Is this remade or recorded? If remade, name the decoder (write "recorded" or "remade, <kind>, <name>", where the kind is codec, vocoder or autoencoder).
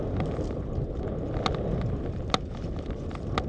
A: recorded